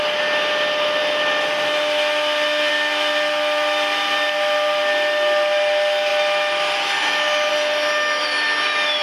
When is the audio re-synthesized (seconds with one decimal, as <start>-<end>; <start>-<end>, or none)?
none